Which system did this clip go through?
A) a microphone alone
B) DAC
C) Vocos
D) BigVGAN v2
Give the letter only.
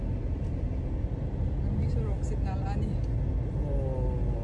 A